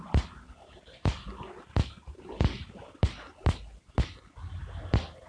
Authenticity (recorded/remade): recorded